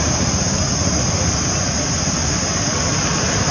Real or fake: real